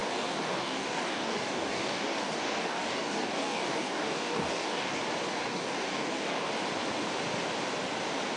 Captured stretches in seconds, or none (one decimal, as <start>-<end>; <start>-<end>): 5.0-5.4; 6.5-8.4